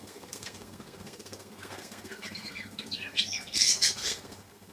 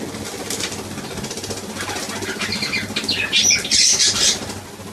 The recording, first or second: second